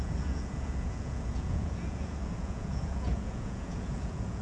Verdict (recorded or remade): remade